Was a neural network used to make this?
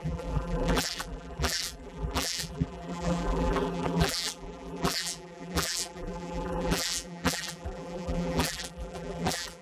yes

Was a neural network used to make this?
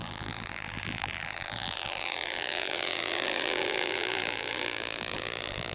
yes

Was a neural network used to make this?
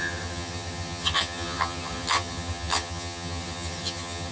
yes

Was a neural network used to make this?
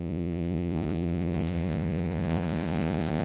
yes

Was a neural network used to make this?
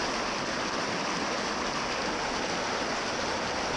no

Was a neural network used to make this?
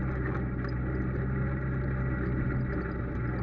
no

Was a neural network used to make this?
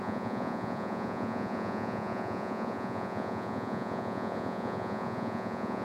yes